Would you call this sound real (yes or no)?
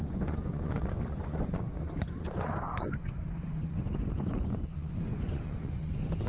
no